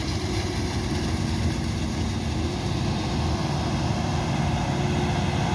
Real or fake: real